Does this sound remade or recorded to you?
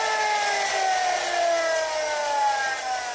recorded